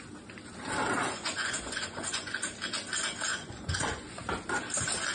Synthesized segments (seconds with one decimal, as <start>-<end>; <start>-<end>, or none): 1.0-2.4; 3.3-4.2